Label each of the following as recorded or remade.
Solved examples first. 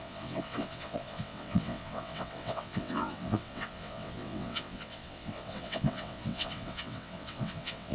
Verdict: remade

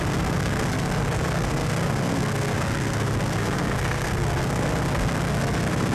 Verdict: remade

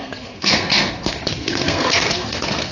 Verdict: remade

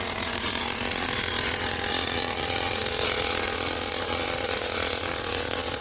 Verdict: remade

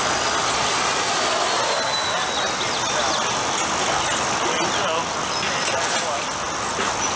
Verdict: recorded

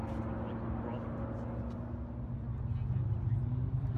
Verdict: recorded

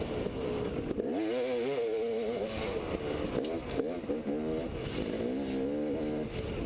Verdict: recorded